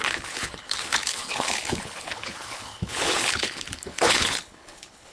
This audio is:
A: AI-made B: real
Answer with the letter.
A